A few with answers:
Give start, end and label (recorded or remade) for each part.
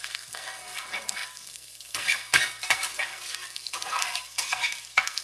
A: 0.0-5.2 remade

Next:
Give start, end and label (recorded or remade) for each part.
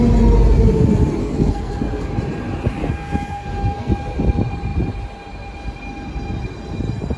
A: 0.0-1.2 recorded; 1.2-2.1 remade; 2.1-2.8 recorded; 2.8-3.9 remade; 3.9-7.2 recorded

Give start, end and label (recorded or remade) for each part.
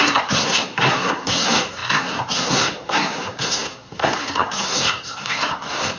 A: 0.0-6.0 remade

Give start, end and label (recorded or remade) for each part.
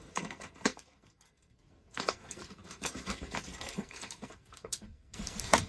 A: 0.0-5.7 remade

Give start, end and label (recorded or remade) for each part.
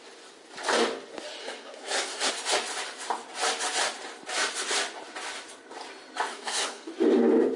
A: 0.0-1.4 recorded; 1.4-2.3 remade; 2.3-6.3 recorded; 6.3-6.9 remade; 6.9-7.6 recorded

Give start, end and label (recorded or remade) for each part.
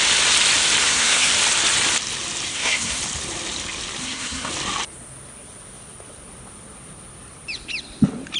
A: 0.0-0.8 recorded; 0.8-1.3 remade; 1.3-2.5 recorded; 2.5-3.0 remade; 3.0-4.0 recorded; 4.0-4.5 remade; 4.5-8.4 recorded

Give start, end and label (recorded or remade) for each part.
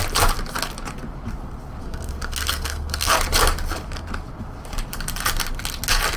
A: 0.0-1.8 recorded; 1.8-3.1 remade; 3.1-6.2 recorded